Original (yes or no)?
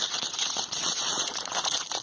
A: no